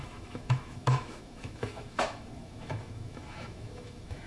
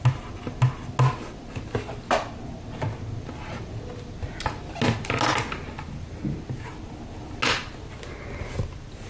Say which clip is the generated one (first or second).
first